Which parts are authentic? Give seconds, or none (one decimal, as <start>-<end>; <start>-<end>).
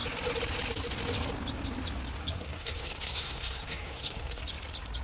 0.0-2.2; 4.4-5.0